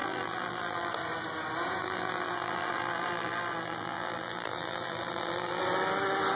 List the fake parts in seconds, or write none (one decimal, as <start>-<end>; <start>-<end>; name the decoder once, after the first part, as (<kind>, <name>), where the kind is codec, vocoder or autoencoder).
0.0-0.9 (vocoder, BigVGAN v2); 1.8-5.6